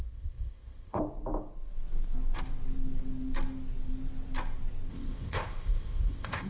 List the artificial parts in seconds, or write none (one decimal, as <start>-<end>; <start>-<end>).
0.0-1.0; 4.9-6.5